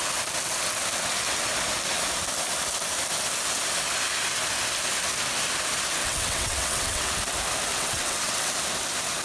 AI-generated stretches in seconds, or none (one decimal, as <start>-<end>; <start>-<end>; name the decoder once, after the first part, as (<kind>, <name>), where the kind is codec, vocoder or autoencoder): 6.0-7.2 (vocoder, WaveNeXt); 7.7-8.5